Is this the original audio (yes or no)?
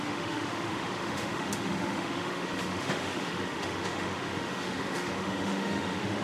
no